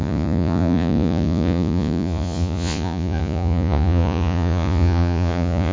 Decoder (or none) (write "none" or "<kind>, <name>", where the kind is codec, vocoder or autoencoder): vocoder, Vocos